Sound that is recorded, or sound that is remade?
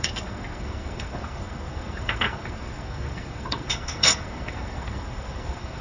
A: remade